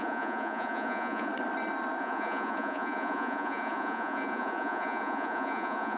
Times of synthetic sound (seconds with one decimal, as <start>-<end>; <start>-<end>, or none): 0.0-1.3; 2.0-6.0